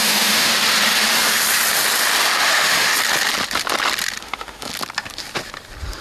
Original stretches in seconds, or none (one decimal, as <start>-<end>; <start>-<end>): 0.5-2.4; 2.9-4.2; 4.7-6.0